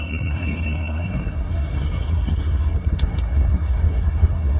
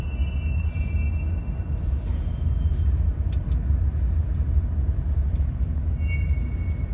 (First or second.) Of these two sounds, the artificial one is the first